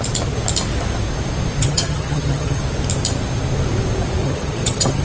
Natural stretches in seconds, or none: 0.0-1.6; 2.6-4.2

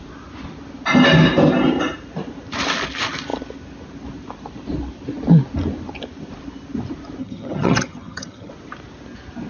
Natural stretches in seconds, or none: 0.0-7.2; 8.5-9.5

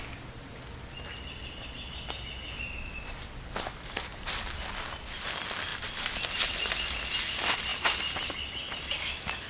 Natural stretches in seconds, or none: 0.0-9.5

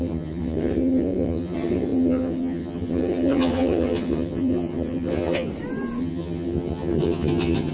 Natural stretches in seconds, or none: 5.5-6.0

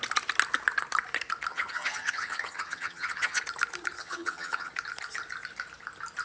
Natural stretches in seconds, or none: 0.0-1.5; 3.4-4.0; 4.7-6.2

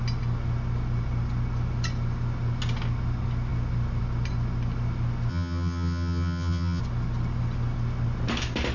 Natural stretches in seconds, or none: 0.0-5.3; 6.8-8.7